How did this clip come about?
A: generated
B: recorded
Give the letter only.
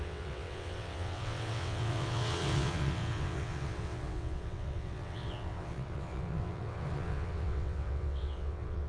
A